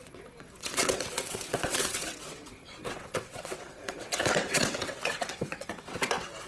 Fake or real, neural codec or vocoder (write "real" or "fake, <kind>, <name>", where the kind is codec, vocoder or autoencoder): fake, vocoder, WaveNeXt